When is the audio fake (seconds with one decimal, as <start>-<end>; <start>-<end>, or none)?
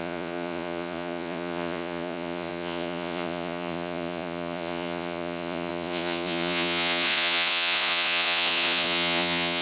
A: 0.0-9.6